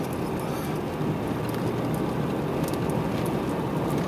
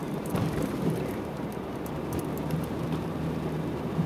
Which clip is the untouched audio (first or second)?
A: first